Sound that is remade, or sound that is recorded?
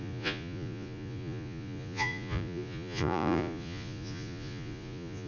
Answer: remade